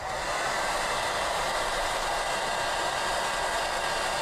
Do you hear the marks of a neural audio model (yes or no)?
no